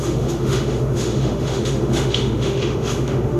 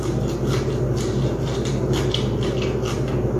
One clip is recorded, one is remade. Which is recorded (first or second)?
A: second